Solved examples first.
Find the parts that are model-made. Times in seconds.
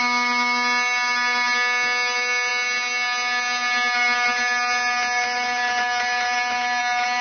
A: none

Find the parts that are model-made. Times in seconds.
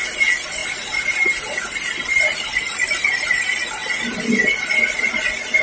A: 0.6-3.4 (vocoder, BigVGAN v2); 3.8-5.1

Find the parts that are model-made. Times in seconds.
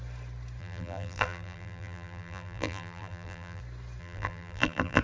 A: 0.6-3.6 (vocoder, BigVGAN v2); 4.0-5.0